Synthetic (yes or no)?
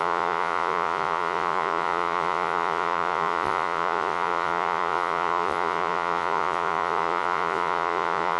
yes